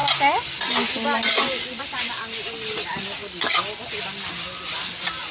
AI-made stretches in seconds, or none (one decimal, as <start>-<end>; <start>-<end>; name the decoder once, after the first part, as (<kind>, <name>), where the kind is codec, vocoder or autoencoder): none